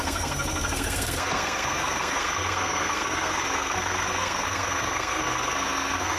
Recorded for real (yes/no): no